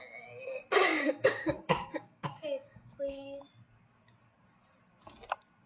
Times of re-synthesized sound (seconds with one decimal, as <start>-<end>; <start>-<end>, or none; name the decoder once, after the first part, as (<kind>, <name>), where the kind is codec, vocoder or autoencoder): 0.9-3.4 (codec, DAC)